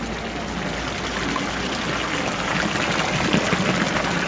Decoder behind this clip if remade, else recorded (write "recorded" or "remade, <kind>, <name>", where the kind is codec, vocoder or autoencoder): recorded